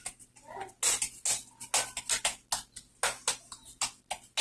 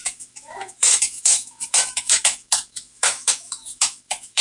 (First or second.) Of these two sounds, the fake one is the second